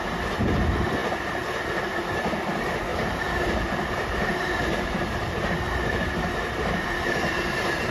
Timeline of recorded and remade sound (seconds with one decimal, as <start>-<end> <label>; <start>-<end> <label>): 0.0-2.9 recorded; 2.9-7.9 remade